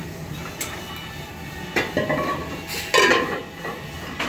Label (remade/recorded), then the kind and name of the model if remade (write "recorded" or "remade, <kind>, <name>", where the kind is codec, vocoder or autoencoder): recorded